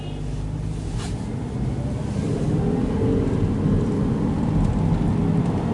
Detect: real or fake real